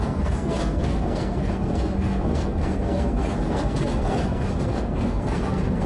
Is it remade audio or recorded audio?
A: remade